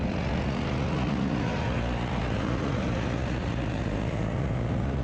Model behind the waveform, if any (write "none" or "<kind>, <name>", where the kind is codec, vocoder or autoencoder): vocoder, Vocos